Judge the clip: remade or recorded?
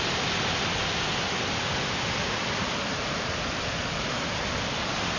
recorded